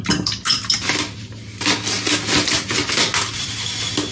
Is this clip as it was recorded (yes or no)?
yes